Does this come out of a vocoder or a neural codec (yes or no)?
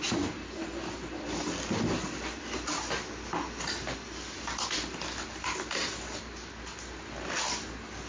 no